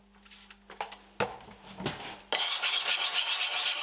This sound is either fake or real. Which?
real